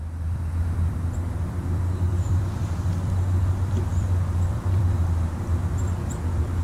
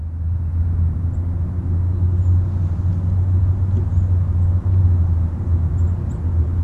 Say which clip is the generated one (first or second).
first